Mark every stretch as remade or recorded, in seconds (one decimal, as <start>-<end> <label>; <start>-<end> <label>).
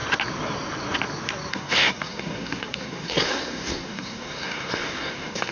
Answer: 0.0-1.5 recorded; 1.5-5.5 remade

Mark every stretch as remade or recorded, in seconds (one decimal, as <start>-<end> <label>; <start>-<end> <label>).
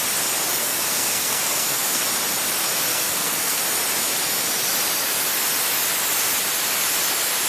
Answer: 0.0-0.6 recorded; 0.6-2.0 remade; 2.0-2.9 recorded; 2.9-3.6 remade; 3.6-7.5 recorded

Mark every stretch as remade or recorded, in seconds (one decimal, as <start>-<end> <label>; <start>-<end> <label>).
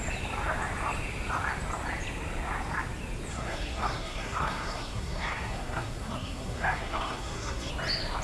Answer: 0.0-3.3 recorded; 3.3-7.7 remade; 7.7-8.2 recorded